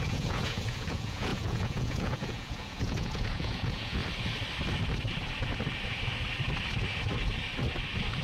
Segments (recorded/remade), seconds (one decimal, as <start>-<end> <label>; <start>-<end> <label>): 0.0-4.0 remade; 4.0-8.2 recorded